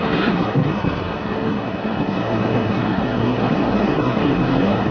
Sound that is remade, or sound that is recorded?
remade